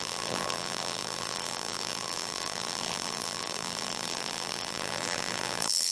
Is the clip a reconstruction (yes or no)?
yes